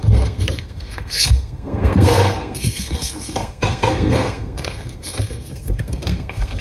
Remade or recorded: remade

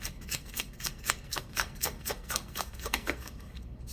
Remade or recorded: remade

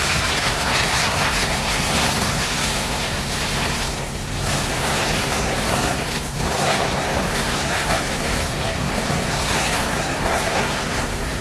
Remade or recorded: remade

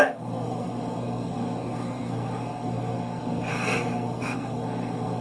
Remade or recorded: remade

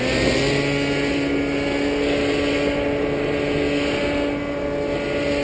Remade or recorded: recorded